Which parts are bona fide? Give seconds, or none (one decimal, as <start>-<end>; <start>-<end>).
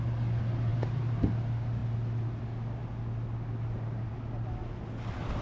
0.0-0.7; 1.2-5.4